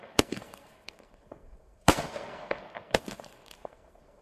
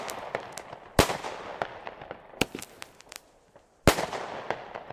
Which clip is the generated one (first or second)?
first